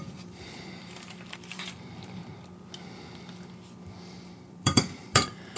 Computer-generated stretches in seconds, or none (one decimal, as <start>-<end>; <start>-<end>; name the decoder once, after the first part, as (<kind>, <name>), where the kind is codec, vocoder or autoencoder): 0.0-2.2 (vocoder, BigVGAN v2); 4.0-5.6